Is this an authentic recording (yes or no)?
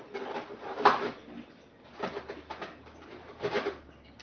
yes